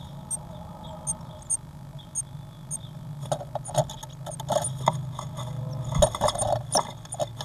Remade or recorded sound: recorded